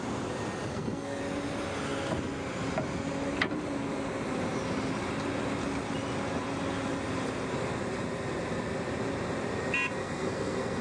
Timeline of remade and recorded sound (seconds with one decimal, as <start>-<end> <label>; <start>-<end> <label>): 0.0-0.7 recorded; 0.7-1.2 remade; 1.2-10.0 recorded; 10.0-10.8 remade

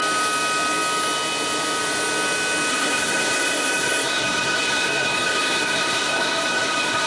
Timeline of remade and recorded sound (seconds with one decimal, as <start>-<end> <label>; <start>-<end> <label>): 0.0-2.7 recorded; 2.7-7.1 remade

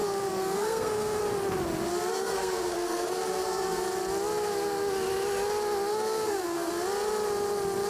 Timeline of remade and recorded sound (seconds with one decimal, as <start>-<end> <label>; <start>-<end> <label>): 0.0-1.2 remade; 1.2-2.1 recorded; 2.1-3.8 remade; 3.8-5.9 recorded; 5.9-6.7 remade; 6.7-7.9 recorded

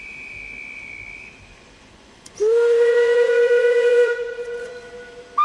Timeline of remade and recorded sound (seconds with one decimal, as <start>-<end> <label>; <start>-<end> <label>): 0.0-1.5 recorded; 1.5-4.7 remade; 4.7-5.4 recorded

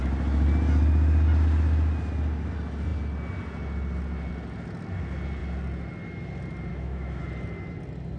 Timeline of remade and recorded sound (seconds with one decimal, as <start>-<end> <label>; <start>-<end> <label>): 0.0-6.7 recorded; 6.7-7.2 remade; 7.2-8.2 recorded

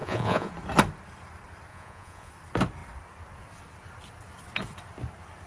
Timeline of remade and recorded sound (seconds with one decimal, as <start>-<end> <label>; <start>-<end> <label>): 0.0-0.5 remade; 0.5-1.7 recorded; 1.7-2.3 remade; 2.3-5.5 recorded